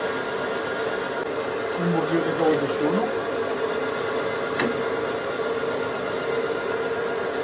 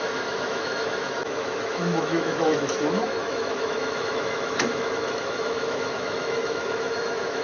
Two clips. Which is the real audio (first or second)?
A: first